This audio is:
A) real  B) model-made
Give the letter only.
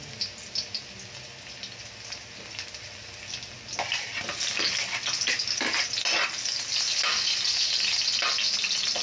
A